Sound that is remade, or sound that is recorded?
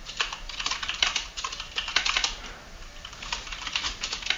remade